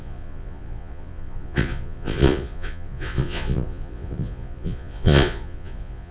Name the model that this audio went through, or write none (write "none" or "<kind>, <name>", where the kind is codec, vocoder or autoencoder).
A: vocoder, Vocos